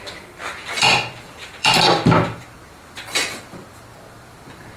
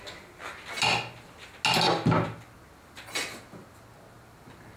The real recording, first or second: second